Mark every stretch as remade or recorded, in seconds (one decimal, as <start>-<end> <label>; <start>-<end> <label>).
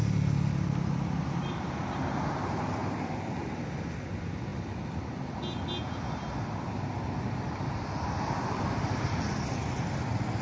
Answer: 0.0-10.4 recorded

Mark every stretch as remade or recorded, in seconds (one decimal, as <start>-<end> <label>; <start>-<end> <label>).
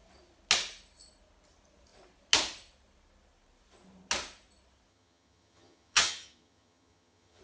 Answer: 0.0-4.9 recorded; 4.9-7.4 remade